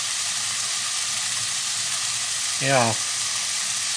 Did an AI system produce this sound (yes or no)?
no